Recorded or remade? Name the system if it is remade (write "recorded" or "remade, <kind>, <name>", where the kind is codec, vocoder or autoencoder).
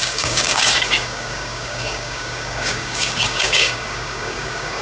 remade, codec, DAC